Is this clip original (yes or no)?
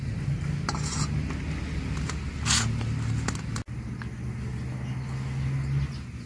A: yes